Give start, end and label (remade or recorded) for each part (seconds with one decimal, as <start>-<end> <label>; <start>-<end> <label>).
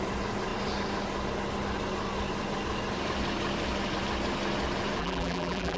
0.0-5.0 recorded; 5.0-5.8 remade